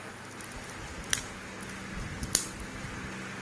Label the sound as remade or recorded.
recorded